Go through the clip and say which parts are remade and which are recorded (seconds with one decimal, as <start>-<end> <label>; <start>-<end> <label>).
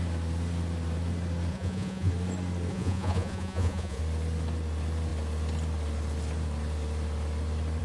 0.0-1.5 recorded; 1.5-2.1 remade; 2.1-2.7 recorded; 2.7-4.0 remade; 4.0-7.8 recorded